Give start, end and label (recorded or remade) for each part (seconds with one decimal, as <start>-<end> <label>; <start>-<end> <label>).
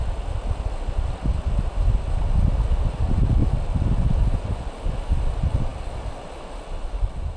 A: 0.0-7.4 recorded